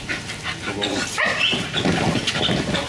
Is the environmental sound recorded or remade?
recorded